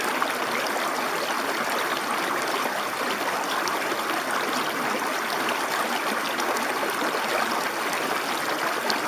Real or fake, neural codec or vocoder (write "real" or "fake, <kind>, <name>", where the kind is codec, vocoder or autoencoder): real